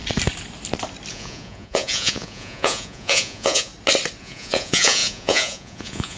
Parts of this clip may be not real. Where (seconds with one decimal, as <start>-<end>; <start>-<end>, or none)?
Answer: 1.1-3.7; 4.2-6.2